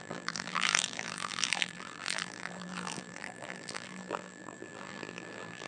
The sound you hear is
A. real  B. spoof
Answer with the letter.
B